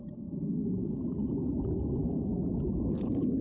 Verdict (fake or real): real